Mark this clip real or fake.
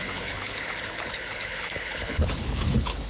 fake